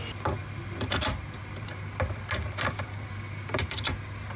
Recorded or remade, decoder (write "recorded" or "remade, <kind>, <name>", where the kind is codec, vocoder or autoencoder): recorded